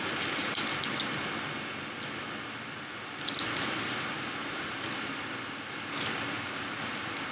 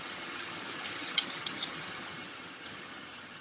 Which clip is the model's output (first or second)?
second